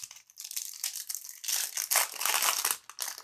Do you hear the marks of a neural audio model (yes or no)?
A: no